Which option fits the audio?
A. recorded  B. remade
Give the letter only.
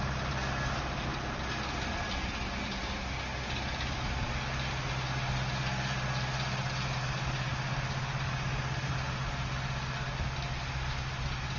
A